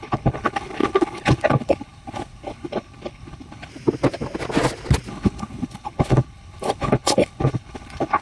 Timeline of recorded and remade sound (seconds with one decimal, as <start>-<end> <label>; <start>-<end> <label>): 0.0-3.7 remade; 3.7-5.1 recorded; 5.1-8.2 remade